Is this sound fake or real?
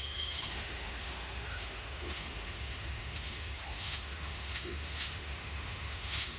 fake